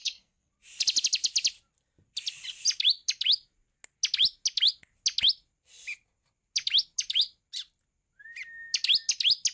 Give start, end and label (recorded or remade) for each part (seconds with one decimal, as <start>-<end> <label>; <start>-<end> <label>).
0.0-0.5 remade; 0.5-9.5 recorded